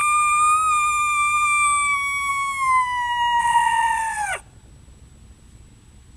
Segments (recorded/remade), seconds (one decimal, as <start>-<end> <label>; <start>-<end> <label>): 0.0-3.4 recorded; 3.4-4.4 remade; 4.4-6.2 recorded